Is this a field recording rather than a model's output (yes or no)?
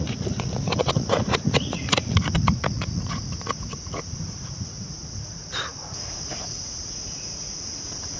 no